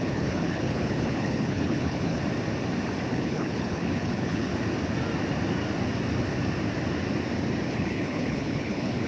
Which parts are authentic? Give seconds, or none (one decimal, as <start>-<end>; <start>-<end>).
2.2-3.1; 4.5-7.7